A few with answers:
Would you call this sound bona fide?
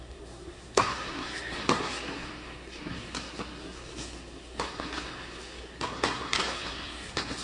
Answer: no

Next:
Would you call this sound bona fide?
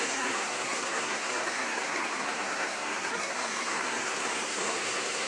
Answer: no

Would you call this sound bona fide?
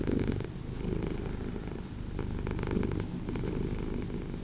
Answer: yes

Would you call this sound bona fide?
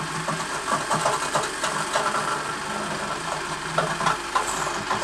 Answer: yes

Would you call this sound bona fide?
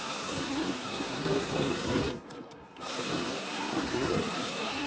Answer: no